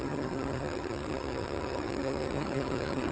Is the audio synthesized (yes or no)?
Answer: yes